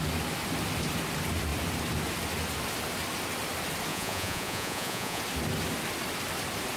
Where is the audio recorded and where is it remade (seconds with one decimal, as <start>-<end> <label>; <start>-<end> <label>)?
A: 0.0-3.9 recorded; 3.9-5.2 remade; 5.2-6.8 recorded